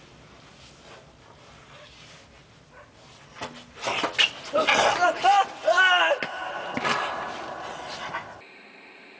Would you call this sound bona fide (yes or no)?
yes